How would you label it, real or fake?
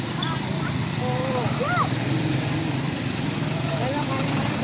fake